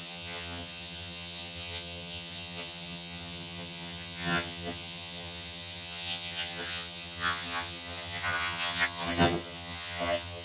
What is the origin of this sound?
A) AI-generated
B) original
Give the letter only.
A